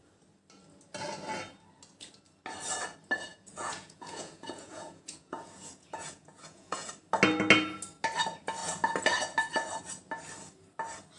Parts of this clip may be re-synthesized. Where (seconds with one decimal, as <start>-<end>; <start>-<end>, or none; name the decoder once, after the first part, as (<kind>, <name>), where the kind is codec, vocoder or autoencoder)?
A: 3.3-6.9 (vocoder, Vocos)